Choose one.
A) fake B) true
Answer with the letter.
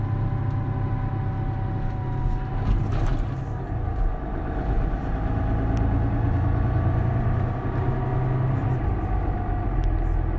B